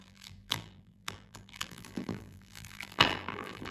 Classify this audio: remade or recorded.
remade